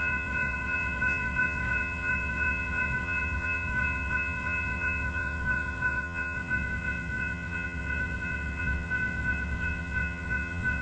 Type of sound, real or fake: fake